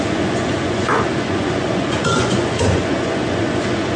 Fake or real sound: fake